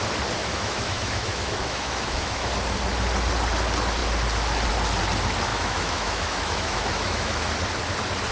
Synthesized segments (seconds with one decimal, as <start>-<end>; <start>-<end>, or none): 0.4-2.5; 5.5-7.5